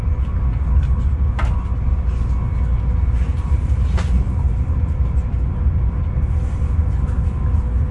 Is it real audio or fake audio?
real